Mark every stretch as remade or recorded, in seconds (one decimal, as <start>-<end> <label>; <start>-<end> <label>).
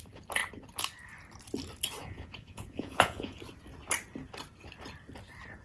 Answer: 0.0-2.0 recorded; 2.0-3.4 remade; 3.4-5.6 recorded